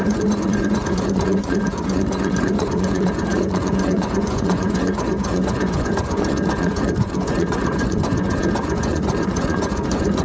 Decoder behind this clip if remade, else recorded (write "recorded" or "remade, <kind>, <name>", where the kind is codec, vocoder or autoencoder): remade, vocoder, Vocos